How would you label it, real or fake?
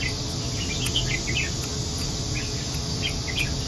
real